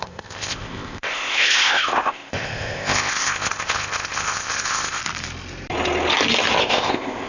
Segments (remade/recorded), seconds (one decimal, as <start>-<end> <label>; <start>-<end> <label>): 0.0-5.0 remade; 5.0-6.6 recorded; 6.6-7.3 remade